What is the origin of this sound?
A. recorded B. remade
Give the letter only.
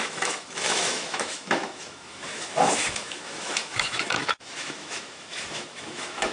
B